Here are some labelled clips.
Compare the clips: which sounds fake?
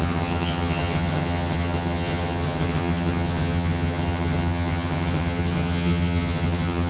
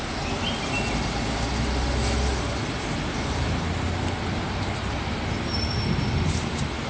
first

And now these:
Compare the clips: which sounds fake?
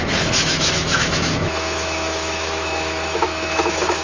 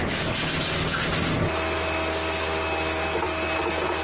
first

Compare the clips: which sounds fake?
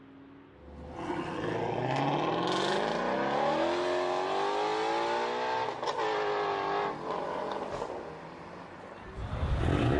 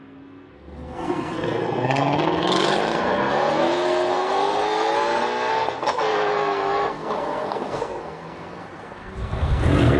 second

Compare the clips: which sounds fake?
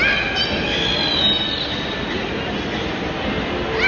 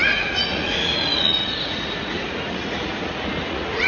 second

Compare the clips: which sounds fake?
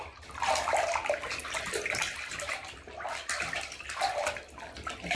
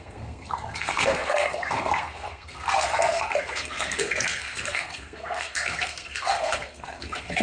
second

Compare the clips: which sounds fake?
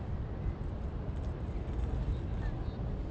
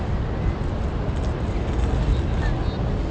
first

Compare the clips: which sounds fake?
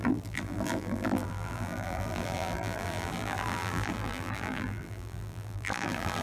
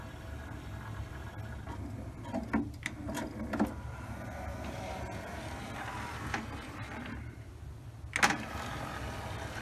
first